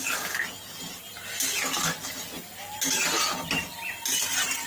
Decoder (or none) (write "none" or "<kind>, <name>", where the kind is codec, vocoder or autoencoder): none